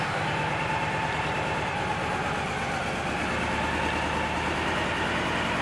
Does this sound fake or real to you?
real